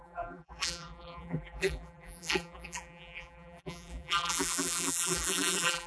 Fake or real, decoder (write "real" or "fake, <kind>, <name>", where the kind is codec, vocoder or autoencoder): fake, vocoder, BigVGAN v2